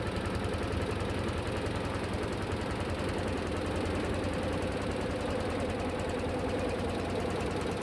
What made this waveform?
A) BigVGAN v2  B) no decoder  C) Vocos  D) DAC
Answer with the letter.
B